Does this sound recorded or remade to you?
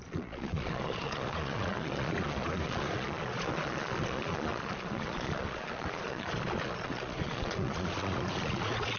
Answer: remade